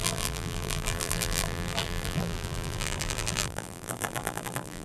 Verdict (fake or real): fake